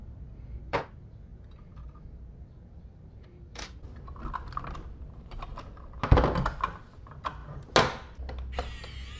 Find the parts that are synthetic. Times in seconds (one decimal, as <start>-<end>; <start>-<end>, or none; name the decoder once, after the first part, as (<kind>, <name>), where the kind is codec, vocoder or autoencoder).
0.0-0.8 (vocoder, BigVGAN v2); 1.3-3.9